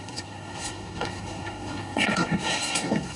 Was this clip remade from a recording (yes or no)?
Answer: yes